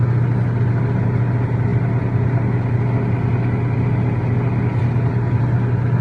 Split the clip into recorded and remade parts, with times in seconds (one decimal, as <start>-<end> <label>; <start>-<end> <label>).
0.0-6.0 recorded